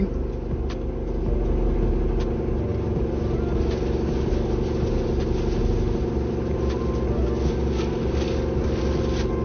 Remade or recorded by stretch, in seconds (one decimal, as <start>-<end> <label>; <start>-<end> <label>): 0.0-9.4 recorded